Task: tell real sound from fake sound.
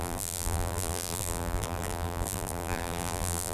fake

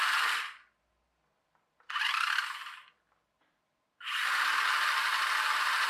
fake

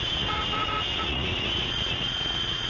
fake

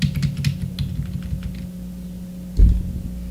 real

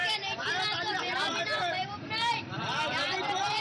fake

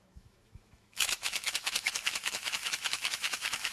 fake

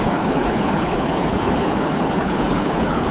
fake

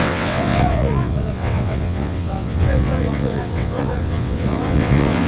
fake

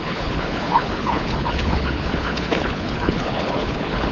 fake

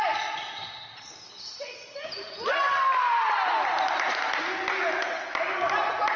real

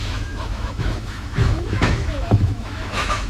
fake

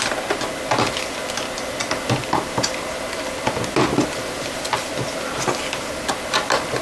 real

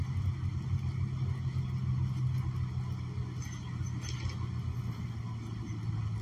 real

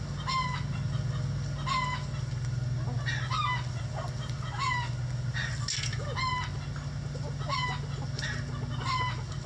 real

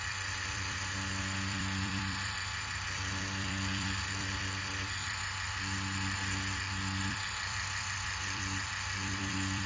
fake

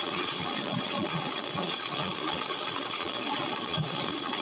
fake